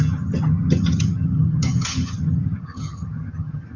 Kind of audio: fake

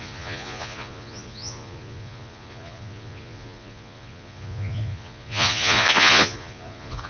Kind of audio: fake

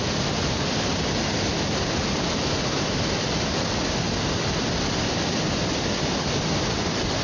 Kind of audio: real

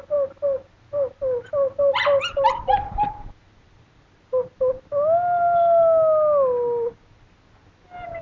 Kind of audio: real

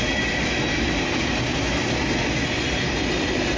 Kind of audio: real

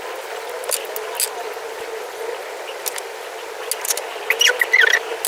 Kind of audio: real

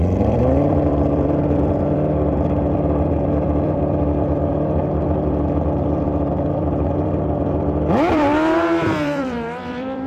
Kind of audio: fake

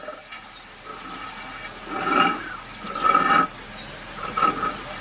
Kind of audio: real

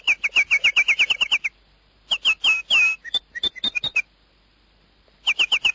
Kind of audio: real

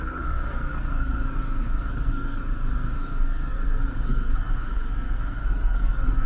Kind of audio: fake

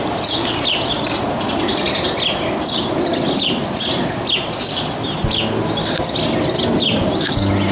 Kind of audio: real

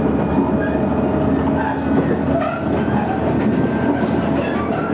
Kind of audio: real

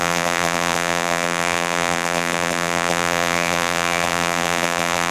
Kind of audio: fake